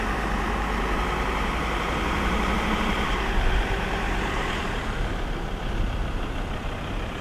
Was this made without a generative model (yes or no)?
no